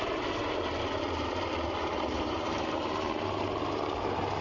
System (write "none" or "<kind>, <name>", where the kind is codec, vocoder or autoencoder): none